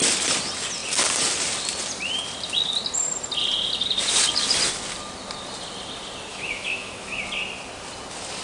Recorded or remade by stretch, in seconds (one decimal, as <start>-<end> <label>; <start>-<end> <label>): 0.0-6.3 recorded; 6.3-7.2 remade; 7.2-8.4 recorded